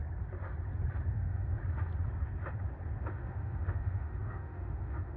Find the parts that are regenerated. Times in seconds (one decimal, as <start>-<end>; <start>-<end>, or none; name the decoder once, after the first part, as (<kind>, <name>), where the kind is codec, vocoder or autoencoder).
1.1-1.6 (autoencoder, DAC-VAE); 3.1-5.2